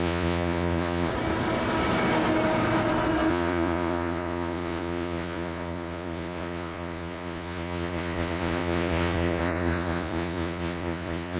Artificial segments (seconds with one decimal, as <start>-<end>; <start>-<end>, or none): 0.0-1.1; 3.3-11.4